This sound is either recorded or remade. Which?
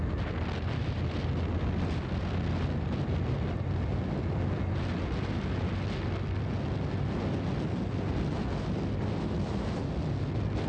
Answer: recorded